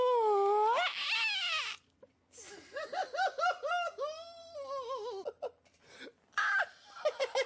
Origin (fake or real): real